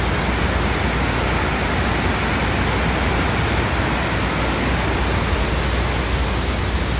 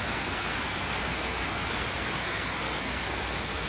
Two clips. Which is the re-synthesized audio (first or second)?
second